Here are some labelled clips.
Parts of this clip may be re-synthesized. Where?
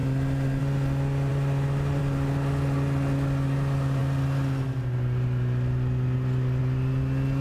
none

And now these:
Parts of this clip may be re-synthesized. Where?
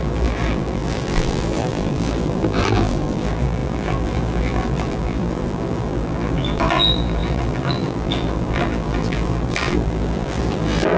0.0-11.0 (vocoder, BigVGAN v2)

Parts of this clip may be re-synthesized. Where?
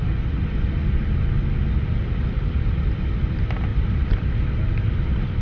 3.7-4.3 (vocoder, BigVGAN v2)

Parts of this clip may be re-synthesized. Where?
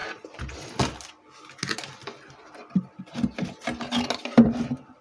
none